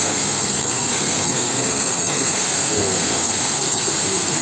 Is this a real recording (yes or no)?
no